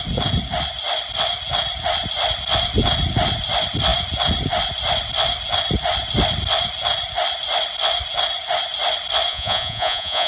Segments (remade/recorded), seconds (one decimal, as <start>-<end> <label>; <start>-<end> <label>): 0.0-9.3 recorded; 9.3-10.3 remade